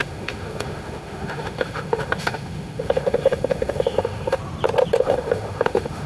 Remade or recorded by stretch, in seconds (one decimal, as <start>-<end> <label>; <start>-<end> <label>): 0.0-4.4 remade; 4.4-5.0 recorded; 5.0-6.1 remade